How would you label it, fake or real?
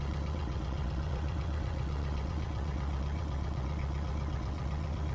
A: fake